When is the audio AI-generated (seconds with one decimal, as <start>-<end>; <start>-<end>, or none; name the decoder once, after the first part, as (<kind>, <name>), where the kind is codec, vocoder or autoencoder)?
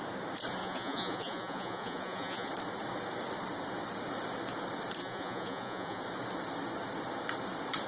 0.6-2.5 (vocoder, Vocos); 5.0-6.0